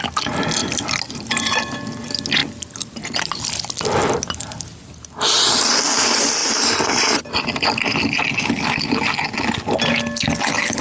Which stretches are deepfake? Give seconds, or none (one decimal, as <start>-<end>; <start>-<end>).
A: none